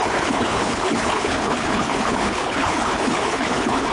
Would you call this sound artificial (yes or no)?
yes